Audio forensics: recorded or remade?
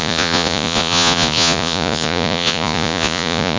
remade